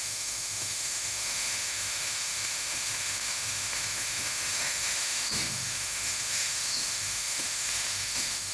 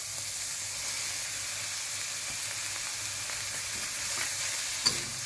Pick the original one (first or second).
second